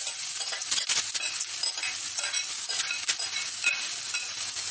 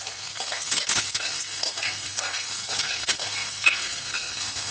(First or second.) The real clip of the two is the first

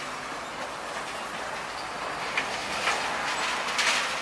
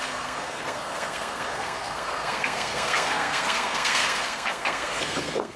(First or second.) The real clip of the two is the first